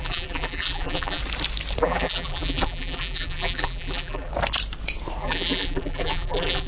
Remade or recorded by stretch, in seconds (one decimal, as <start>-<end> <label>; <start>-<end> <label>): 0.0-1.2 remade; 1.2-1.8 recorded; 1.8-4.3 remade; 4.3-5.2 recorded; 5.2-6.7 remade